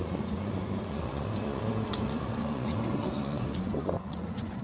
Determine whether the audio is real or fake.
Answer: fake